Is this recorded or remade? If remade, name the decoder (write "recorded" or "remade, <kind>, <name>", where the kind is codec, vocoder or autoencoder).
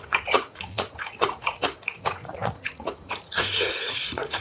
remade, vocoder, Vocos